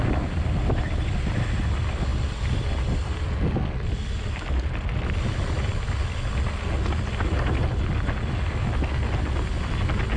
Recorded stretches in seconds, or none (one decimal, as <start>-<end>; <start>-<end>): 0.0-10.2

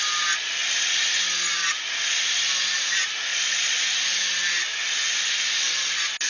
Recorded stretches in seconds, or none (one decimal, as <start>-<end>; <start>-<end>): 0.0-3.3; 3.8-6.3

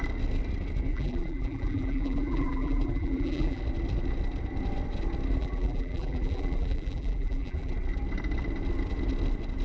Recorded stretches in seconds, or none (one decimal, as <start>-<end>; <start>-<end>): 0.0-0.9; 3.6-5.4; 7.7-9.6

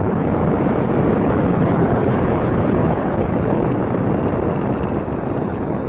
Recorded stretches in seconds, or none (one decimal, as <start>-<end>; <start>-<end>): 0.4-1.2; 3.8-5.4

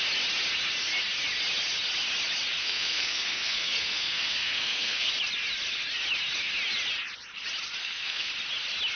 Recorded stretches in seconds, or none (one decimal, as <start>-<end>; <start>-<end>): 0.0-2.6; 5.1-7.8; 8.3-9.0

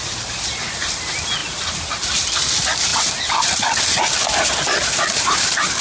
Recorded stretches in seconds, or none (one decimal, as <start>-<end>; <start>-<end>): 0.0-5.8

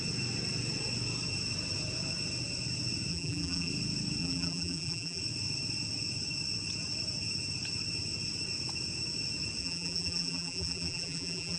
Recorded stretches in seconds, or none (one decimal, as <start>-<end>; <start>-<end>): 0.0-3.1; 3.7-4.2; 5.2-9.6